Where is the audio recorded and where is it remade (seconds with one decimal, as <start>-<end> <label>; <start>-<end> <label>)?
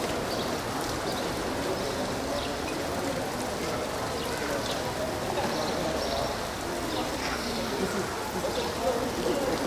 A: 0.0-7.2 recorded; 7.2-7.8 remade; 7.8-9.7 recorded